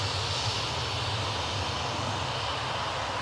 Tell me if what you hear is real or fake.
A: real